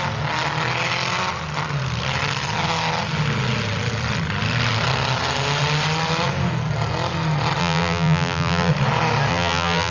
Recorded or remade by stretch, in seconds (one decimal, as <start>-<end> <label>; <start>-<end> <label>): 0.0-7.6 recorded; 7.6-8.7 remade; 8.7-9.3 recorded; 9.3-9.9 remade